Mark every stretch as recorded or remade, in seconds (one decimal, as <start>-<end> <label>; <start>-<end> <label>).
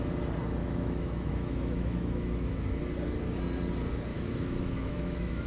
0.0-0.6 recorded; 0.6-2.8 remade; 2.8-4.1 recorded; 4.1-5.5 remade